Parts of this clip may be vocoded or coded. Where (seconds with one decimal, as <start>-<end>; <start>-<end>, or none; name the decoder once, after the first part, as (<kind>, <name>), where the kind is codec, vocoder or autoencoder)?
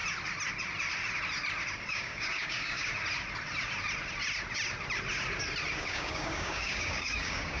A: 1.9-2.9 (codec, DAC); 5.7-7.6